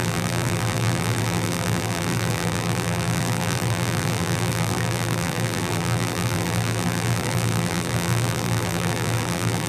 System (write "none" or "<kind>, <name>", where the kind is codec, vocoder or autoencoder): vocoder, BigVGAN v2